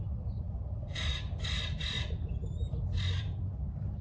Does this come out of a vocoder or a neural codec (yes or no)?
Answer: yes